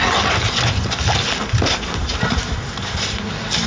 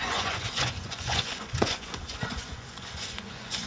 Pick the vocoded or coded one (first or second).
second